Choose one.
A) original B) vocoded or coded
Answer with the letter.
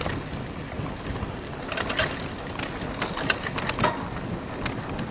A